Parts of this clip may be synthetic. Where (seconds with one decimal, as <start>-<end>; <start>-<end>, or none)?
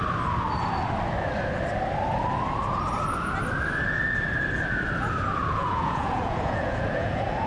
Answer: 5.4-7.5